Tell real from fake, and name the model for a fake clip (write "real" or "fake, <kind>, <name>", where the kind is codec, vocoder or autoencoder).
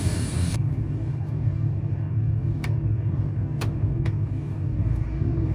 fake, codec, DAC